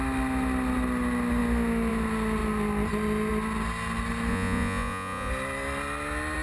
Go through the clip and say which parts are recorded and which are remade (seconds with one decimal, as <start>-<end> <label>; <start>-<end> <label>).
0.0-4.3 recorded; 4.3-5.3 remade; 5.3-6.4 recorded